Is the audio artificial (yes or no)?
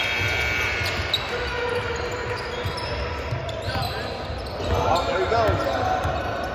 no